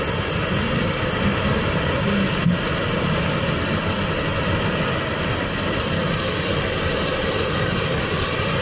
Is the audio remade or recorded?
recorded